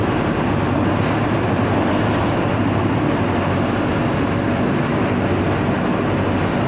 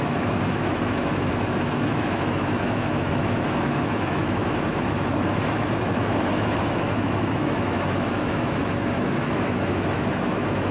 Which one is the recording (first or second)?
first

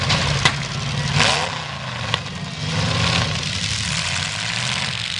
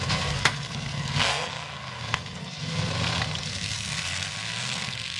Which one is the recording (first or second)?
first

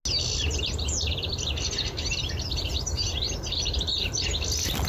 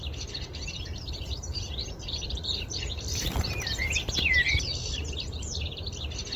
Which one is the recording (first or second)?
first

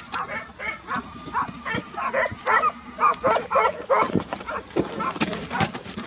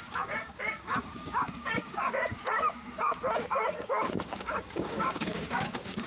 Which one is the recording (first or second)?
first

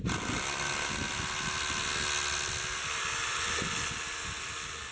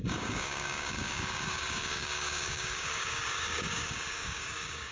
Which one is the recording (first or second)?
first